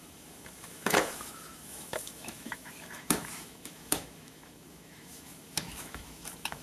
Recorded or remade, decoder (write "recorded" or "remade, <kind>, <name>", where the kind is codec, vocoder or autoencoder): remade, autoencoder, DAC-VAE